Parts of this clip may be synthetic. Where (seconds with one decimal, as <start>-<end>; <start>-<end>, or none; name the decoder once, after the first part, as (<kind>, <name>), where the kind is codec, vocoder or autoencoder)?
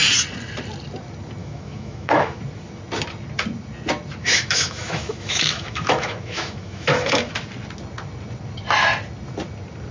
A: 1.4-2.4 (autoencoder, DAC-VAE); 4.2-7.3